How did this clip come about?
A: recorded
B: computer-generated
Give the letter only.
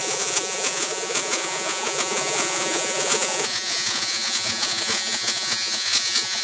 B